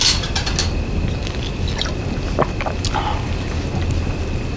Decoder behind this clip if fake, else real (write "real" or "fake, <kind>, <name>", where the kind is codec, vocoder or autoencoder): real